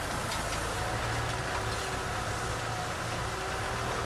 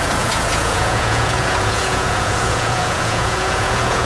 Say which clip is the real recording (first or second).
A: first